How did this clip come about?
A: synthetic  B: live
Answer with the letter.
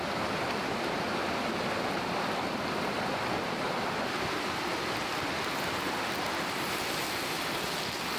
B